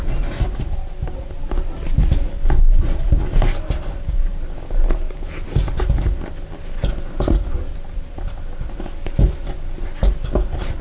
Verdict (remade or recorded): recorded